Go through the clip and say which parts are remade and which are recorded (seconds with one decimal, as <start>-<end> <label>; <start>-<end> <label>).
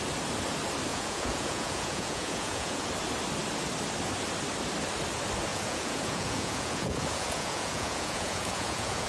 0.0-0.9 recorded; 0.9-2.9 remade; 2.9-5.5 recorded; 5.5-9.1 remade